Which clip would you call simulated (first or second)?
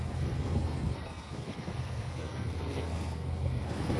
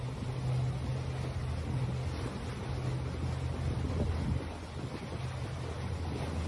first